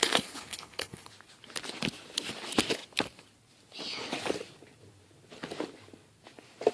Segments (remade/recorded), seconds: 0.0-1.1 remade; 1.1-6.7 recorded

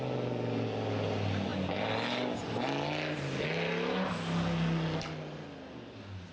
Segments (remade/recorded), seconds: 0.0-6.3 recorded

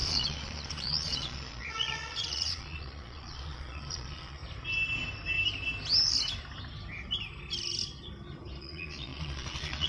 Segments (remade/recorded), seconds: 0.0-4.4 remade; 4.4-8.6 recorded; 8.6-9.9 remade

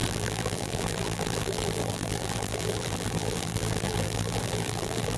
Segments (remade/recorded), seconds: 0.0-5.2 remade

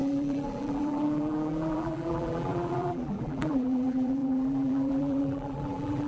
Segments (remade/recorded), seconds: 0.0-6.1 remade

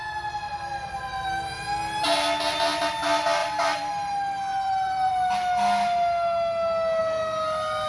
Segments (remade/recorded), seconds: 0.0-3.4 recorded; 3.4-3.9 remade; 3.9-4.5 recorded; 4.5-5.1 remade; 5.1-7.9 recorded

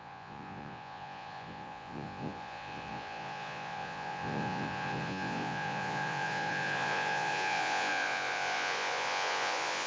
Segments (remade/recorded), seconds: 0.0-9.9 remade

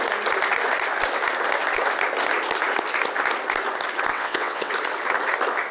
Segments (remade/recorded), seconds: 0.0-4.1 recorded; 4.1-4.7 remade; 4.7-5.7 recorded